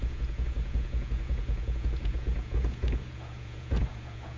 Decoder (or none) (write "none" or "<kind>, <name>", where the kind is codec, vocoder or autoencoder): vocoder, Vocos